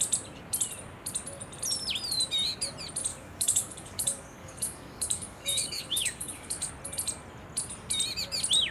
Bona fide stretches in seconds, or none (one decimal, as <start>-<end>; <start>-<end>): 0.0-3.1; 6.7-8.7